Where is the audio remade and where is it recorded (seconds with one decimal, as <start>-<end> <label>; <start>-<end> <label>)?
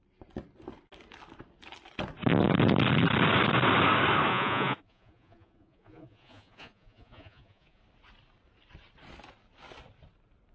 0.0-4.3 recorded; 4.3-7.8 remade; 7.8-10.5 recorded